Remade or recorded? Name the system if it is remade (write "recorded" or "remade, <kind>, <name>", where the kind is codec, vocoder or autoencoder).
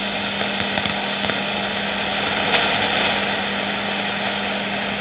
recorded